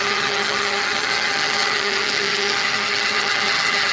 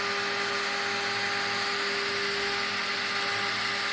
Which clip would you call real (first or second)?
second